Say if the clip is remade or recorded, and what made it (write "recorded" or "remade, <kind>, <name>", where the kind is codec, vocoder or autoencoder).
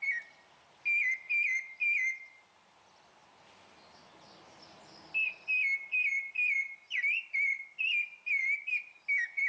recorded